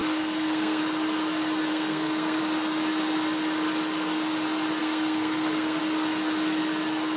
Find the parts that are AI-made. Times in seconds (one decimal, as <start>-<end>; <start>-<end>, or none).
0.0-0.8; 1.7-2.4; 4.8-5.8